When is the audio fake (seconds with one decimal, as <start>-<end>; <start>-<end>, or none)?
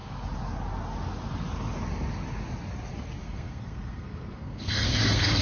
3.2-5.4